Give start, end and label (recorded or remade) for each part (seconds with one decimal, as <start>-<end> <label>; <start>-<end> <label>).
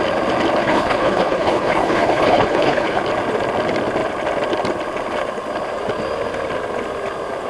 0.0-0.6 recorded; 0.6-3.0 remade; 3.0-7.5 recorded